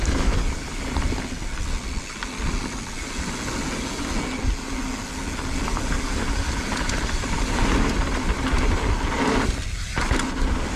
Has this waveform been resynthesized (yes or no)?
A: no